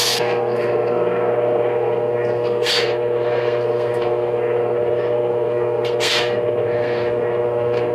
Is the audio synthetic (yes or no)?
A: yes